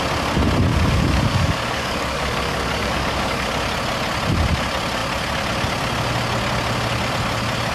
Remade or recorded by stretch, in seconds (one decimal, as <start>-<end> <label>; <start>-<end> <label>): 0.0-0.7 recorded; 0.7-3.5 remade; 3.5-7.7 recorded